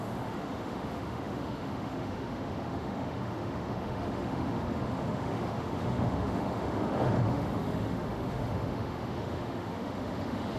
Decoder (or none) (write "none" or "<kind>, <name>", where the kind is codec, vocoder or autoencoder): autoencoder, DAC-VAE